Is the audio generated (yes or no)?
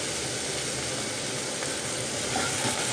no